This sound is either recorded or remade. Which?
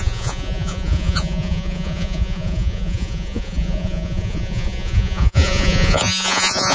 remade